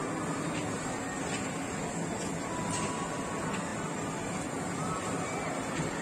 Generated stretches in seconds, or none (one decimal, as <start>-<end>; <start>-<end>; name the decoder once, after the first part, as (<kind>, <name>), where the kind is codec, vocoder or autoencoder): none